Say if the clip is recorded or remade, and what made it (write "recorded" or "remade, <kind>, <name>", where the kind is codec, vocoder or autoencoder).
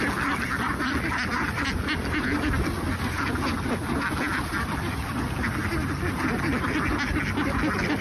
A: recorded